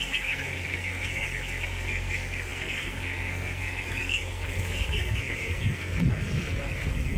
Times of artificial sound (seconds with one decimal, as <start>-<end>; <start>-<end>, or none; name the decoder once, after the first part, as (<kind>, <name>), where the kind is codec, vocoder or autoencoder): 0.0-7.2 (codec, SNAC)

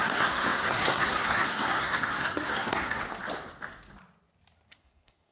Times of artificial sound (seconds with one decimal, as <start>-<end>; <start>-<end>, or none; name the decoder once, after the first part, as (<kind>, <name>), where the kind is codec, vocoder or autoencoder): 0.0-3.0 (codec, SNAC); 4.7-5.3

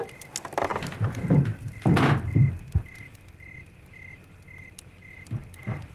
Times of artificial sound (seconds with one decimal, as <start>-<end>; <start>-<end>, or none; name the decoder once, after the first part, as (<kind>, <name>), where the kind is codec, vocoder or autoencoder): none